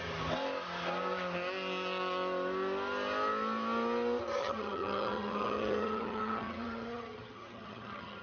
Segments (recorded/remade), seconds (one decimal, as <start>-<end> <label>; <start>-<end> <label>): 0.0-4.4 recorded; 4.4-8.2 remade